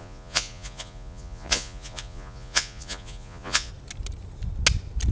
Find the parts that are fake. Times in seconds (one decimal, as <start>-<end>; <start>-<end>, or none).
0.0-3.7